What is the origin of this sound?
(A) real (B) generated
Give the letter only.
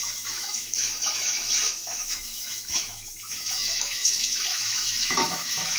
B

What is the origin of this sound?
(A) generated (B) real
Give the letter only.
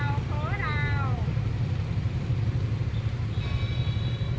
B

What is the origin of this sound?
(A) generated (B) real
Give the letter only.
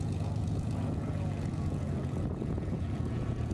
A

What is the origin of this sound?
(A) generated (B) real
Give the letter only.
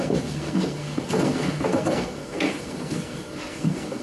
A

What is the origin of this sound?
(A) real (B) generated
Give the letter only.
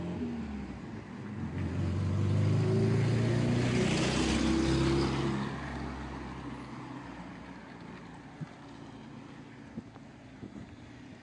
A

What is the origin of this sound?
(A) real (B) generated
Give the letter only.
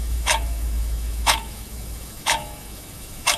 B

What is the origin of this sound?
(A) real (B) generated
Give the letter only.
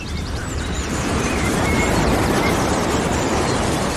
B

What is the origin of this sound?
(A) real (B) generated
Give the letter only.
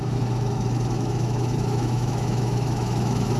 B